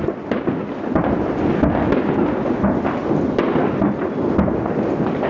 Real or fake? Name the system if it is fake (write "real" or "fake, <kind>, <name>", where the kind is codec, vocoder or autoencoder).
real